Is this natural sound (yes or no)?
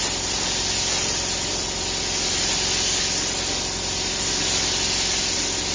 yes